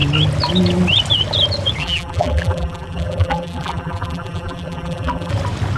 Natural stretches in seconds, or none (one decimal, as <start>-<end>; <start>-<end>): 0.0-1.8; 5.3-5.8